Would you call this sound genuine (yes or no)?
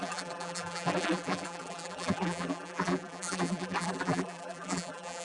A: no